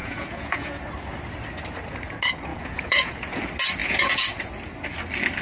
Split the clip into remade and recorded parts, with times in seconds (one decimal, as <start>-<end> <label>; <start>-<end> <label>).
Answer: 0.0-0.8 remade; 0.8-2.5 recorded; 2.5-3.4 remade; 3.4-3.8 recorded; 3.8-4.5 remade; 4.5-5.4 recorded